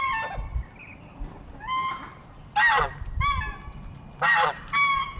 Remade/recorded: recorded